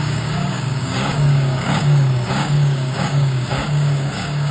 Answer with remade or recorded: remade